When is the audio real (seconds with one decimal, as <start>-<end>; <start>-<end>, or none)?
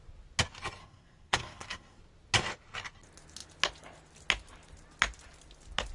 0.0-0.8; 2.0-5.9